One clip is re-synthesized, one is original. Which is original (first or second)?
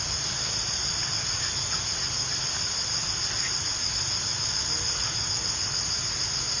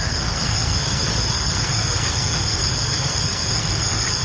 first